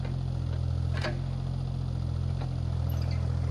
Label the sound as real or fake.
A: real